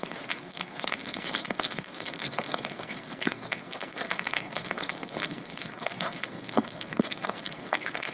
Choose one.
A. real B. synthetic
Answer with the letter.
B